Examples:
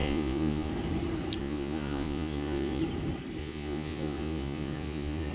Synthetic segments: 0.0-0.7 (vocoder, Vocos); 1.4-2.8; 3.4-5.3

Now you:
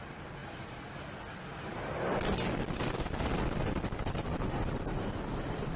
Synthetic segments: none

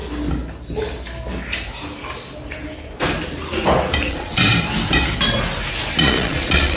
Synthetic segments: 4.1-4.5 (vocoder, Vocos); 6.0-6.8

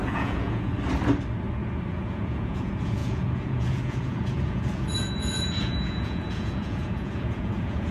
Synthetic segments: 0.0-0.7 (vocoder, Vocos); 1.9-7.9

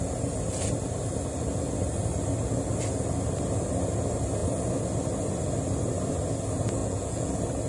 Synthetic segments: 6.8-7.3 (vocoder, Vocos)